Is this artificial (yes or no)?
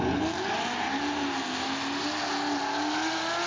no